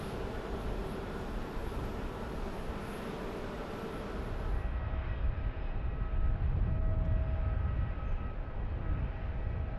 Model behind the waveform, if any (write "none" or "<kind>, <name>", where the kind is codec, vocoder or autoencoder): none